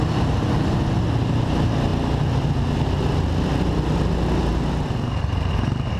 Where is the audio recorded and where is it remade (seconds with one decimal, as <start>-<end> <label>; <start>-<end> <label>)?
0.0-6.0 recorded